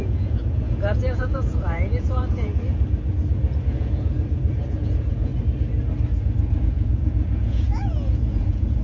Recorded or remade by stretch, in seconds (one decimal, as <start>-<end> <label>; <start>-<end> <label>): 0.0-2.5 remade; 2.5-3.6 recorded; 3.6-4.1 remade; 4.1-4.7 recorded; 4.7-5.3 remade; 5.3-6.6 recorded; 6.6-8.8 remade

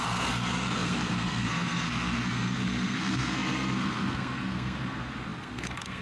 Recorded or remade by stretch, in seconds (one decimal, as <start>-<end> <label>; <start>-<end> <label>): 0.0-6.0 remade

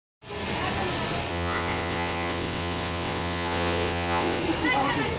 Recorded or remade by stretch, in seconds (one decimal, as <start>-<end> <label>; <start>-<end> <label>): 0.0-1.3 recorded; 1.3-4.4 remade; 4.4-5.2 recorded